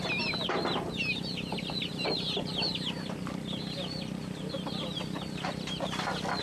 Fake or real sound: real